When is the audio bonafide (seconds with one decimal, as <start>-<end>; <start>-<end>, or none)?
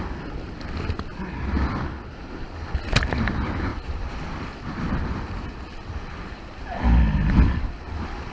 0.0-1.1; 1.8-3.7; 6.1-8.3